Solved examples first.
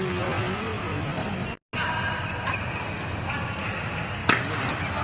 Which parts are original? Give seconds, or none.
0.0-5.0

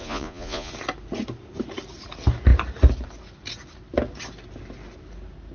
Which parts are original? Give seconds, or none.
0.7-5.5

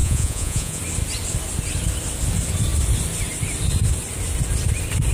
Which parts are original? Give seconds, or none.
0.8-5.1

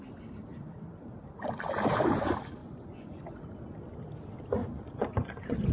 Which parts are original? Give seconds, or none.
0.0-2.6; 3.4-4.6

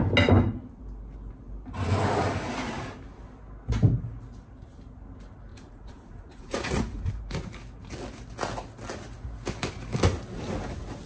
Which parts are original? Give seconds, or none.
0.0-5.5; 7.1-11.1

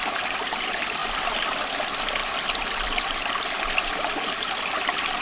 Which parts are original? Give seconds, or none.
0.0-5.2